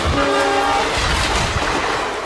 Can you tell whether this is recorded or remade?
recorded